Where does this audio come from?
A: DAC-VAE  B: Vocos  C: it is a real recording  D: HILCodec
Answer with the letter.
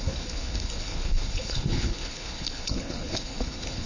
D